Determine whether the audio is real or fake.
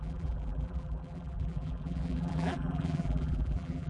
fake